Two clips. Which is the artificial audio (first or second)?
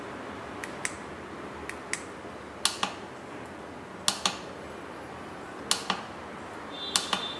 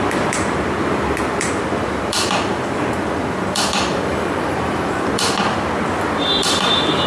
second